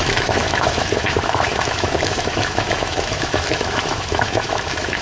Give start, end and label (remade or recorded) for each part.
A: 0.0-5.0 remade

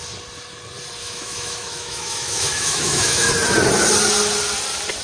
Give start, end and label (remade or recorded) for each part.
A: 0.0-1.0 recorded; 1.0-3.3 remade; 3.3-5.0 recorded

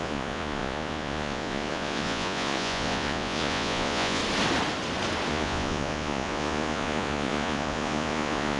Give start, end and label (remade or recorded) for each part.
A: 0.0-4.2 remade; 4.2-5.3 recorded; 5.3-8.6 remade